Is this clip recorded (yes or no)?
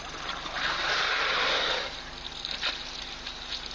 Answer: yes